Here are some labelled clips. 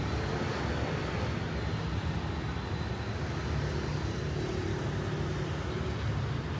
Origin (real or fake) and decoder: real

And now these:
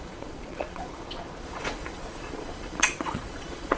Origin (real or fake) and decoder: fake, vocoder, Vocos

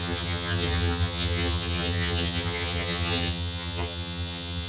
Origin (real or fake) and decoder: fake, vocoder, HiFi-GAN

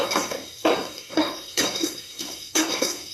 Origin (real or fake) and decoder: fake, codec, SNAC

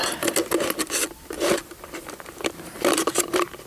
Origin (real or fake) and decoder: real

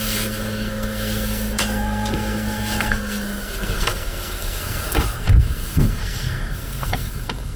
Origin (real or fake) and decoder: fake, codec, SNAC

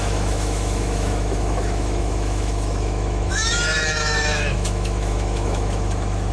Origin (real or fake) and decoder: fake, autoencoder, DAC-VAE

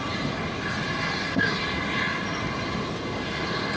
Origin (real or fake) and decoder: real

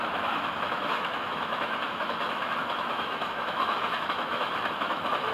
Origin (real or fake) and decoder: fake, autoencoder, DAC-VAE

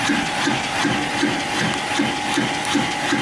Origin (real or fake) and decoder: real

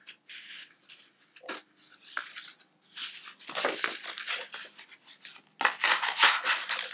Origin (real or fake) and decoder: real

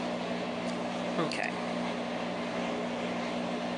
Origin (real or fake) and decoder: real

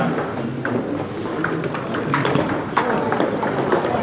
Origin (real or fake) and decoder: real